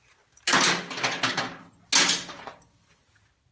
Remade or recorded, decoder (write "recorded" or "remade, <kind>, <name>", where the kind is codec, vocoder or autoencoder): recorded